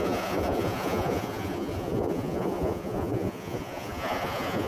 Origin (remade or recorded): remade